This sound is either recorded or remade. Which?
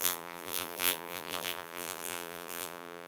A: remade